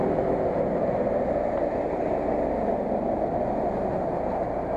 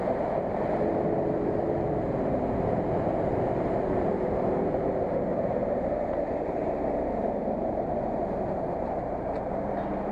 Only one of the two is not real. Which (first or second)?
second